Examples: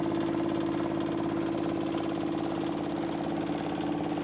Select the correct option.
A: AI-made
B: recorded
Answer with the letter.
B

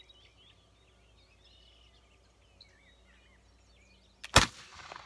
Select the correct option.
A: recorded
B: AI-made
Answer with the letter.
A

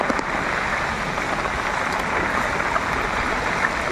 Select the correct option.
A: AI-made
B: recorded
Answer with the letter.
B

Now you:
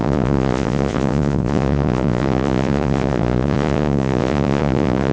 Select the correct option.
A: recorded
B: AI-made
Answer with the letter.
B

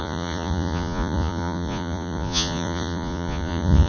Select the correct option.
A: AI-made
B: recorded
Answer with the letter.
A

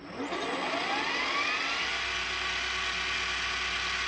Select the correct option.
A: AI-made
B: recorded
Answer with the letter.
B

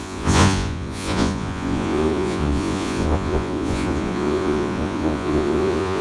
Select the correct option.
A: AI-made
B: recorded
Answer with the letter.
A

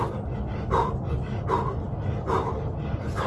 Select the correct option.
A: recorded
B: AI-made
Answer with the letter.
A